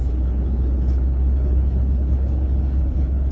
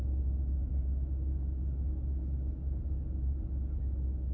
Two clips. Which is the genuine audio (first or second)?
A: second